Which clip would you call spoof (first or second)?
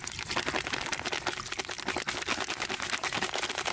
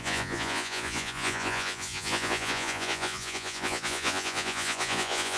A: second